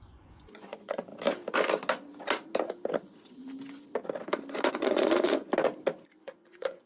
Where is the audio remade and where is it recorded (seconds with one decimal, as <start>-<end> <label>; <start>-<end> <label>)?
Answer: 0.0-1.1 remade; 1.1-4.7 recorded; 4.7-5.5 remade; 5.5-6.2 recorded; 6.2-6.9 remade